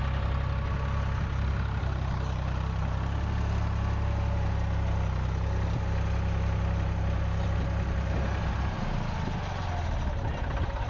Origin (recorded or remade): recorded